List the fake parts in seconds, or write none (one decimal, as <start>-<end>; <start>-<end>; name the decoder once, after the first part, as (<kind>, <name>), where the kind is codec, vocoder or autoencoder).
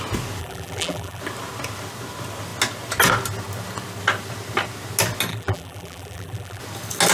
0.4-1.2 (vocoder, BigVGAN v2); 5.3-6.6